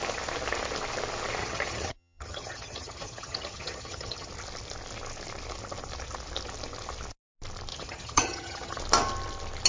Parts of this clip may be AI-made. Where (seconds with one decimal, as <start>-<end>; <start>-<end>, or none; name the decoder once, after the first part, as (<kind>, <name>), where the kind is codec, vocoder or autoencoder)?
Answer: 1.4-4.3 (vocoder, HiFi-GAN); 7.7-8.8

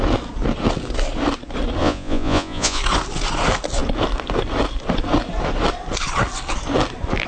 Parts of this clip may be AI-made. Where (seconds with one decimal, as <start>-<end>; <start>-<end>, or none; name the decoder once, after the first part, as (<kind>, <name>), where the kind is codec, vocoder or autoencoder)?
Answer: 1.8-2.8 (vocoder, Vocos)